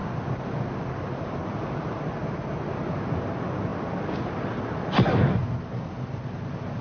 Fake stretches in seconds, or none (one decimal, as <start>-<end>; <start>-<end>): none